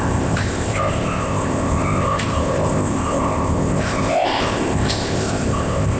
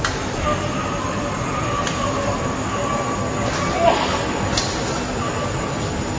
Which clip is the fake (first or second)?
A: first